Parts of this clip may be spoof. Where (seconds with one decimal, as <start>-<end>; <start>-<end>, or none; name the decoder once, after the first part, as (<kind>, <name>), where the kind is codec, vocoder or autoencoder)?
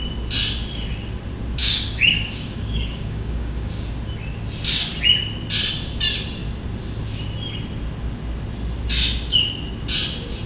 1.6-3.9 (codec, DAC)